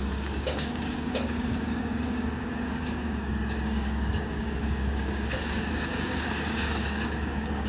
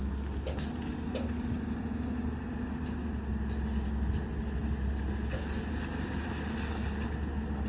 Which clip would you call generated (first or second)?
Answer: first